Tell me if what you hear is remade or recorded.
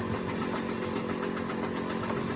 recorded